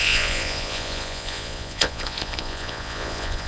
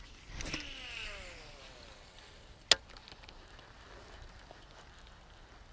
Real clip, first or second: second